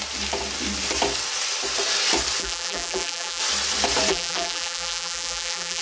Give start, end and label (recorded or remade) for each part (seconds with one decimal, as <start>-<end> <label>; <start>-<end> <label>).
0.0-2.4 recorded; 2.4-3.4 remade; 3.4-4.1 recorded; 4.1-5.8 remade